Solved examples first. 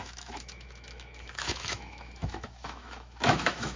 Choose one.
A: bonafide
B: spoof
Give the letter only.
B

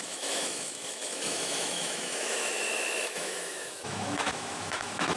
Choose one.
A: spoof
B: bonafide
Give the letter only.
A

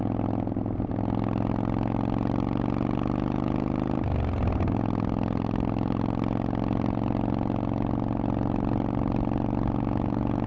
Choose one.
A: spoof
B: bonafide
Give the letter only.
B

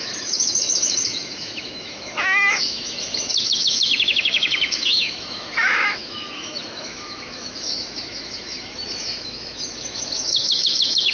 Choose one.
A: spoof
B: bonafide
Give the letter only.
A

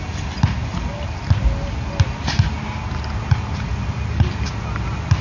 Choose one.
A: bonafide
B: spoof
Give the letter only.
A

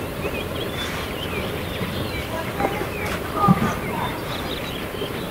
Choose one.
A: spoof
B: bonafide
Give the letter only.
B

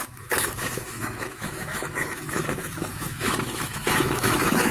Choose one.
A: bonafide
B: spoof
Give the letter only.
B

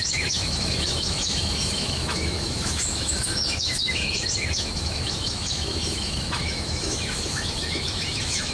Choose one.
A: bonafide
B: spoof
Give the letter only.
B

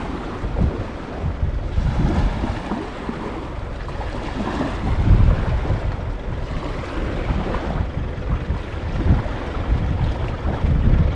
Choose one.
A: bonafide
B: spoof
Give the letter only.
A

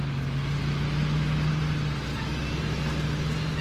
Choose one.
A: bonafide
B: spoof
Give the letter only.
A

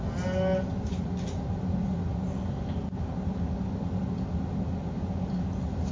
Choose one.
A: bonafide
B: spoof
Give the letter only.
A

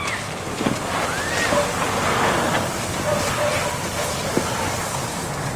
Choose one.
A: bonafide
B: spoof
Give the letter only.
A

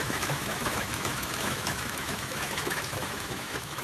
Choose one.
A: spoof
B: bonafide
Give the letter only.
A